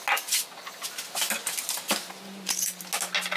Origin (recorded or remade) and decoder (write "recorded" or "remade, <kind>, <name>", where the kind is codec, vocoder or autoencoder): recorded